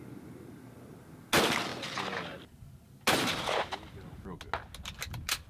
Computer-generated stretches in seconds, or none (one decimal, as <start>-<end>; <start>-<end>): none